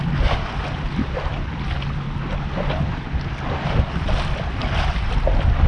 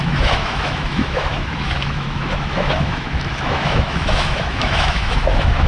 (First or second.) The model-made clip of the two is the second